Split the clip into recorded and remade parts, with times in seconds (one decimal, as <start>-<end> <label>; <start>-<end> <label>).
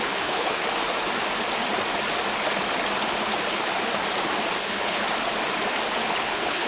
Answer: 0.0-0.6 remade; 0.6-4.6 recorded; 4.6-5.0 remade; 5.0-6.2 recorded; 6.2-6.7 remade